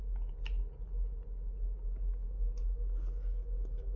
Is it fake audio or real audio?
real